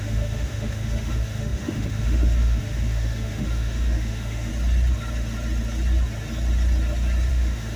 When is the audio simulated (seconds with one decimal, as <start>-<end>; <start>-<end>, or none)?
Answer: 0.0-4.5; 7.3-7.8